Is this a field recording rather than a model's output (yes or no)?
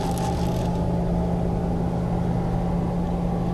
yes